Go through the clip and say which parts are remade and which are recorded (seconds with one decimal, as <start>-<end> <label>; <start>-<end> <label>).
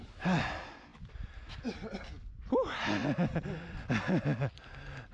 0.0-5.1 recorded